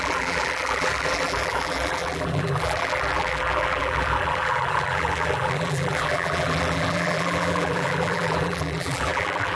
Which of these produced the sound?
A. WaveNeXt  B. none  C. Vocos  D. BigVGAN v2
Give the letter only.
D